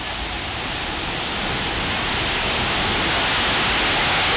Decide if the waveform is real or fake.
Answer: real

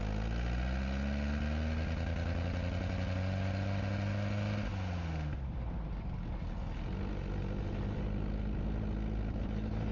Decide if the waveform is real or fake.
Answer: real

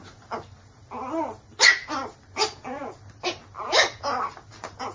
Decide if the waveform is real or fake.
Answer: real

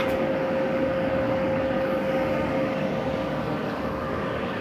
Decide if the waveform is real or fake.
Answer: fake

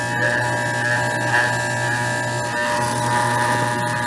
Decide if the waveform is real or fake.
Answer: real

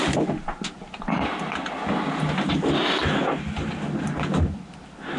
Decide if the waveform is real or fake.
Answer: real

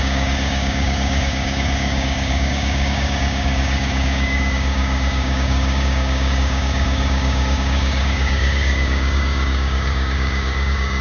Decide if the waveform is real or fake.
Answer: fake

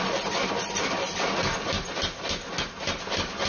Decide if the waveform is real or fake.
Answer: real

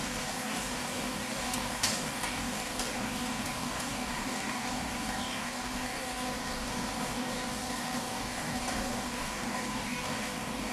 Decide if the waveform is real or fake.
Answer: fake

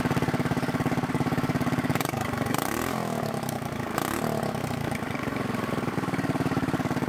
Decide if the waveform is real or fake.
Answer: fake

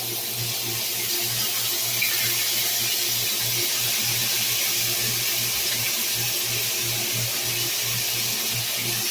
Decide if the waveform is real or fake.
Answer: real